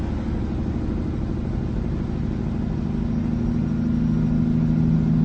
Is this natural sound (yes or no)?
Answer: yes